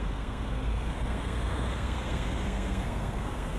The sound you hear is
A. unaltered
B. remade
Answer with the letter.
B